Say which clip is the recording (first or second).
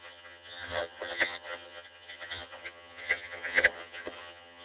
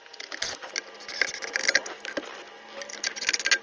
second